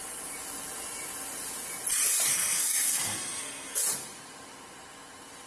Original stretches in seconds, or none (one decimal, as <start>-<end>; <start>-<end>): 0.0-2.3; 3.8-5.5